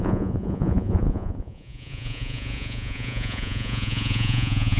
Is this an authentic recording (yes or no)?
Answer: no